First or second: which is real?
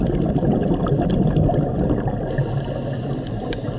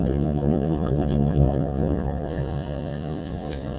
first